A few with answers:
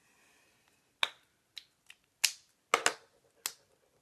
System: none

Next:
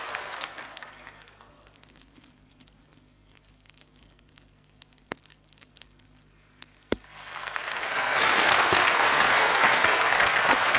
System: codec, SNAC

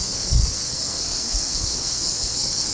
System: codec, SNAC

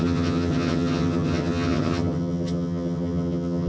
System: vocoder, HiFi-GAN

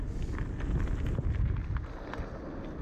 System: none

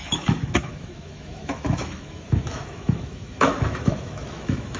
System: autoencoder, DAC-VAE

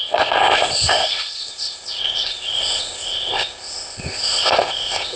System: codec, ZipCodec